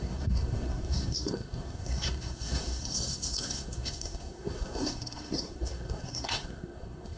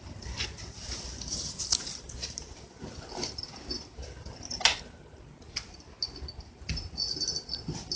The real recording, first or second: second